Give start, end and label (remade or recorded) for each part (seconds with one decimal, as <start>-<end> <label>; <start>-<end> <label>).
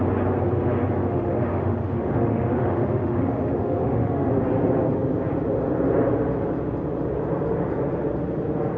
0.0-1.0 recorded; 1.0-4.3 remade; 4.3-8.8 recorded